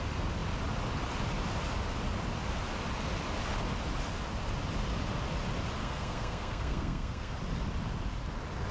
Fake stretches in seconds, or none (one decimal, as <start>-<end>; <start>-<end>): 5.8-7.3